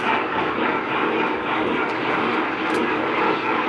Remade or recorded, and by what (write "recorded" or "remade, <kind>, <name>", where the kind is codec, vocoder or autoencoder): remade, codec, DAC